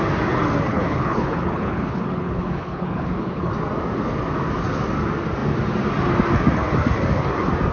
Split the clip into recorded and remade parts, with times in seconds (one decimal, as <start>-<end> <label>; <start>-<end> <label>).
0.0-0.7 recorded; 0.7-3.5 remade; 3.5-7.7 recorded